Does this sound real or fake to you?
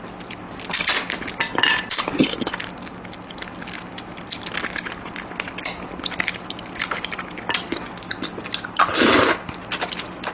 real